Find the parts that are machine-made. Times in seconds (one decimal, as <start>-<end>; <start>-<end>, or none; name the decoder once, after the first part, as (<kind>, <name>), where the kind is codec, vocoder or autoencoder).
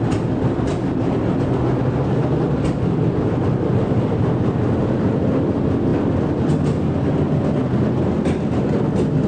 none